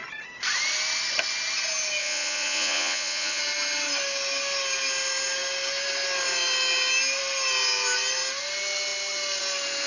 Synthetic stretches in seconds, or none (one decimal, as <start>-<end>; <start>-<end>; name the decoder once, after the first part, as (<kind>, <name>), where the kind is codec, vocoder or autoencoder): 2.0-3.4 (vocoder, Vocos)